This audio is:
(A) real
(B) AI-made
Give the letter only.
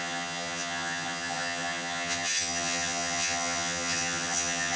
B